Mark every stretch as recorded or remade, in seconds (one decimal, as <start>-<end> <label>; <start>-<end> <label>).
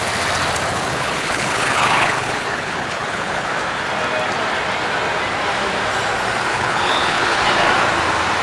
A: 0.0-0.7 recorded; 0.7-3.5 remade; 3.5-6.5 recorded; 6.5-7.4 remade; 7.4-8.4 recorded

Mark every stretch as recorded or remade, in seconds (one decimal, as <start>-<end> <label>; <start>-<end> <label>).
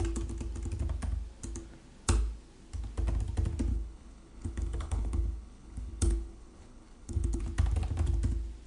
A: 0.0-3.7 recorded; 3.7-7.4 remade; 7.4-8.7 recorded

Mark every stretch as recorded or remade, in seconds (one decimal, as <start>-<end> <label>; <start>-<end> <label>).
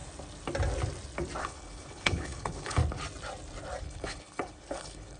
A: 0.0-1.4 recorded; 1.4-2.8 remade; 2.8-3.8 recorded; 3.8-5.2 remade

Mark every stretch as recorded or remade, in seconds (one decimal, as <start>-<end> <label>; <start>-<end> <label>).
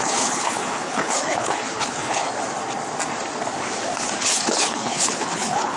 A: 0.0-2.2 remade; 2.2-4.2 recorded; 4.2-5.8 remade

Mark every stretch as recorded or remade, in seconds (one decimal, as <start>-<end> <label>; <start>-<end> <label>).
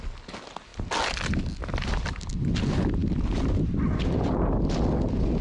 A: 0.0-5.4 recorded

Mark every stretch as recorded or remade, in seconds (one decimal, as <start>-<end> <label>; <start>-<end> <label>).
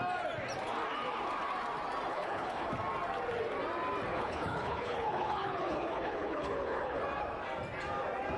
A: 0.0-2.1 recorded; 2.1-2.7 remade; 2.7-4.1 recorded; 4.1-7.0 remade; 7.0-8.4 recorded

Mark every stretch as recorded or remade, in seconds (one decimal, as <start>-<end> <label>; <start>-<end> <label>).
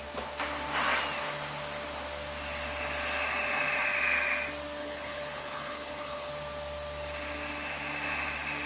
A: 0.0-4.8 recorded; 4.8-6.3 remade; 6.3-8.7 recorded